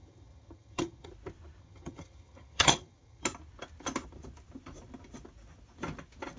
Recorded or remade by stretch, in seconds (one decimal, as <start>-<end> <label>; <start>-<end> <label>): 0.0-1.1 remade; 1.1-1.6 recorded; 1.6-3.2 remade; 3.2-6.4 recorded